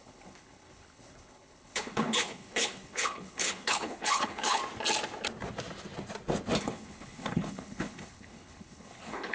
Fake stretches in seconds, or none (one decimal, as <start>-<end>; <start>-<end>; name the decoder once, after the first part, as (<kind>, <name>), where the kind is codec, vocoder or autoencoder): 0.0-4.6 (codec, HILCodec); 6.6-9.3